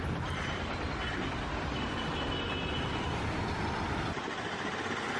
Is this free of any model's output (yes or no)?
yes